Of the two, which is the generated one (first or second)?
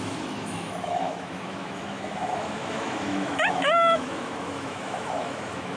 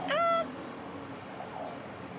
first